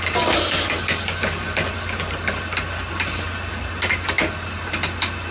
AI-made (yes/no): no